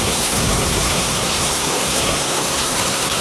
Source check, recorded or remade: remade